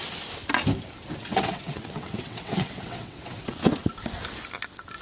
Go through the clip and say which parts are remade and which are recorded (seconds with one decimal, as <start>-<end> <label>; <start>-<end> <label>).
0.0-1.2 recorded; 1.2-3.9 remade; 3.9-5.0 recorded